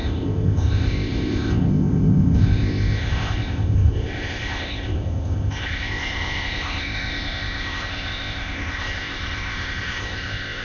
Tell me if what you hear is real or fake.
fake